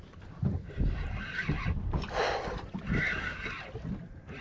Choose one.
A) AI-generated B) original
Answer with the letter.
B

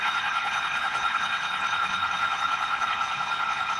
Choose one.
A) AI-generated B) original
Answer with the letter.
A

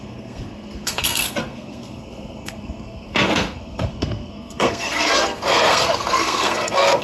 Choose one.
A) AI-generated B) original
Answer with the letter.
A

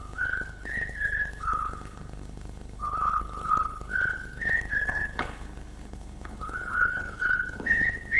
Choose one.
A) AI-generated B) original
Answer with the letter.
A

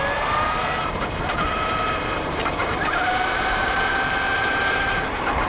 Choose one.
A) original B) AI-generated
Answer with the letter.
B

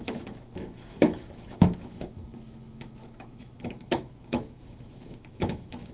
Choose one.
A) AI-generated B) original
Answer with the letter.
A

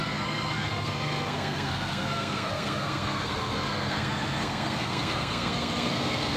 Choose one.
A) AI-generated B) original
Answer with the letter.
A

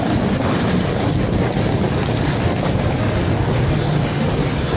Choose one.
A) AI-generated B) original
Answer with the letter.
B